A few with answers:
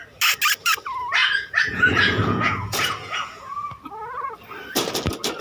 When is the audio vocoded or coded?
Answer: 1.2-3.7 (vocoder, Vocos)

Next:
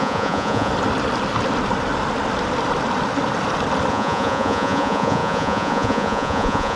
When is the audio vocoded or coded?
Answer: 0.0-0.7 (vocoder, Vocos); 3.9-6.8

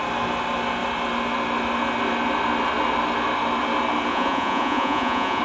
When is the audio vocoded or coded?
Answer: 4.1-5.4 (vocoder, Vocos)

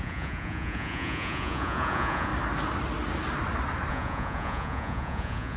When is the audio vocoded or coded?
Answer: 0.0-2.3 (vocoder, Vocos); 3.9-5.6

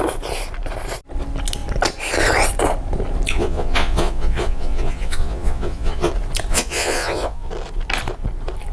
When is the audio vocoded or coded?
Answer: 3.3-6.1 (vocoder, Vocos); 6.5-7.5

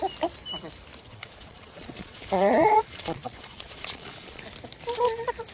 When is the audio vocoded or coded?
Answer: 1.1-4.4 (vocoder, Vocos)

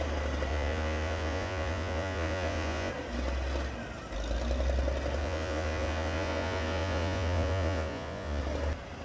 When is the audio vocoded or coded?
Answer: 0.5-2.9 (vocoder, Vocos); 5.2-8.4